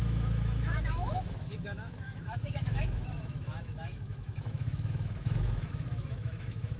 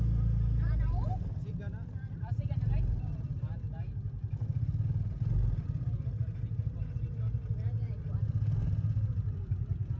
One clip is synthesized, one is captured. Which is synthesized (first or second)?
first